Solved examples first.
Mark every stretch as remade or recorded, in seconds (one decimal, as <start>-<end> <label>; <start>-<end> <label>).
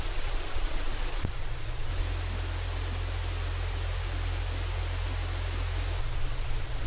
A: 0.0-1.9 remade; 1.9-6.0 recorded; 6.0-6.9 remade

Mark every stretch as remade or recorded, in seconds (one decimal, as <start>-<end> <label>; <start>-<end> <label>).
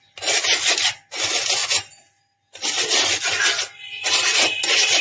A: 0.0-5.0 recorded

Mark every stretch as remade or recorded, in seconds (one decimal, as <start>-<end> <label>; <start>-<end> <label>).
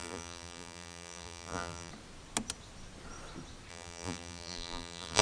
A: 0.0-1.9 remade; 1.9-3.7 recorded; 3.7-5.2 remade